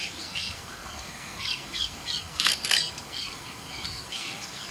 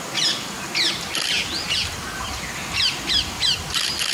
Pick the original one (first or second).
second